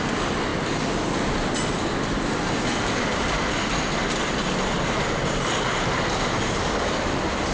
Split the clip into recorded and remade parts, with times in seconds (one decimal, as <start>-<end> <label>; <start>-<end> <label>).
0.0-7.5 recorded